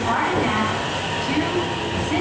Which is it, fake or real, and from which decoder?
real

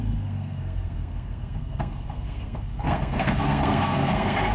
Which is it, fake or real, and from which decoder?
fake, codec, SNAC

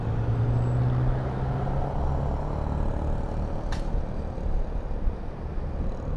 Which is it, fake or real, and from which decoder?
real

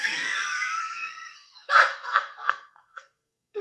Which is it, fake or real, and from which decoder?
fake, codec, SNAC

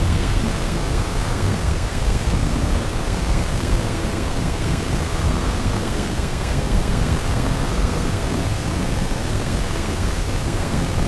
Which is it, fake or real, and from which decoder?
fake, codec, SNAC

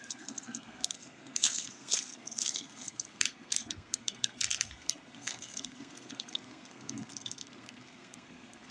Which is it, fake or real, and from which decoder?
fake, codec, SNAC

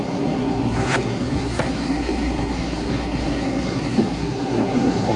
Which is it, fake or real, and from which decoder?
fake, codec, SNAC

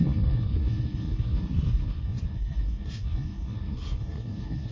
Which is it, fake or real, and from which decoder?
fake, codec, SNAC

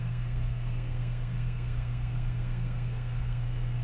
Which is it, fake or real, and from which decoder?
fake, codec, SNAC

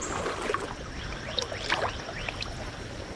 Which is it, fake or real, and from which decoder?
real